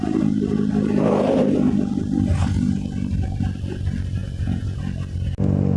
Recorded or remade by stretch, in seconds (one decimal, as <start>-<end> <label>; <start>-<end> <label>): 0.0-4.2 recorded; 4.2-4.8 remade; 4.8-5.8 recorded